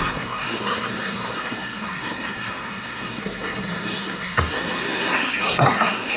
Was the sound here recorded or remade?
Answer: remade